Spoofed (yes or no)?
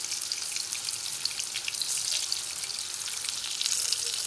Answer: no